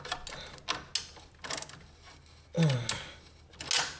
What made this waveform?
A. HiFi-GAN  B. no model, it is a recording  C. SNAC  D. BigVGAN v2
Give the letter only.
B